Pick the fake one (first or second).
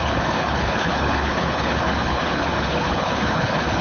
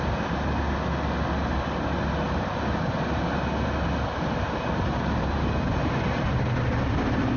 first